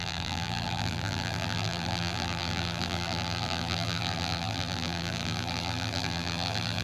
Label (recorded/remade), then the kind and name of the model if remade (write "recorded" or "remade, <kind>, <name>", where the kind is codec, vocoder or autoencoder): remade, vocoder, BigVGAN v2